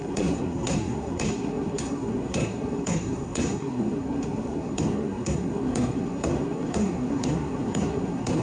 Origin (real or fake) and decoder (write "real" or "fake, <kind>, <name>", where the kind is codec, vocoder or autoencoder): fake, codec, SNAC